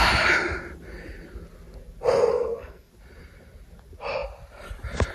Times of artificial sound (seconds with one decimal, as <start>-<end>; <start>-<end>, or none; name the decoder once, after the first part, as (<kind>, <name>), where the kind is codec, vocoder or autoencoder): 2.3-2.9 (codec, SNAC)